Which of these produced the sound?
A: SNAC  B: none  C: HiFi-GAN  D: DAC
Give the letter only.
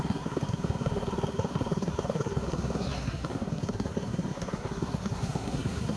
A